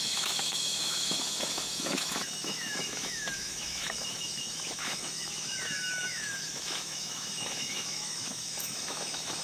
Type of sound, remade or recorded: remade